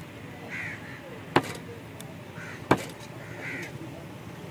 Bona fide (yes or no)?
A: yes